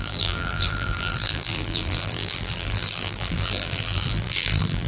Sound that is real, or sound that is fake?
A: fake